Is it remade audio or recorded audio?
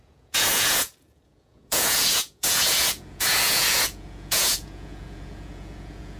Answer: remade